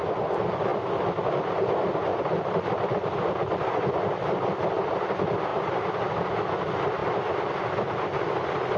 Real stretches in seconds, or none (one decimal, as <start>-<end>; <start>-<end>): 0.0-2.1; 4.6-8.8